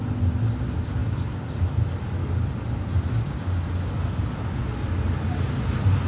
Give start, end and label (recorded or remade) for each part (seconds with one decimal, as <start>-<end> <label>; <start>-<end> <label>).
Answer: 0.0-6.1 recorded